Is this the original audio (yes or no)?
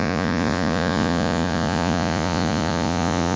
no